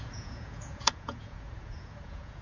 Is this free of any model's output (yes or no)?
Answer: no